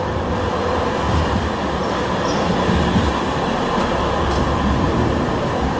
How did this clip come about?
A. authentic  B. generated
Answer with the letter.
A